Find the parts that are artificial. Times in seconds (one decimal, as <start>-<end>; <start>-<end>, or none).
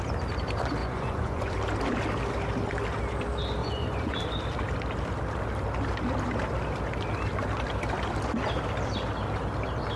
0.8-1.5; 3.6-4.2